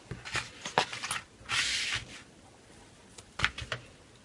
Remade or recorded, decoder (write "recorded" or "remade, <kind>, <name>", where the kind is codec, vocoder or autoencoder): recorded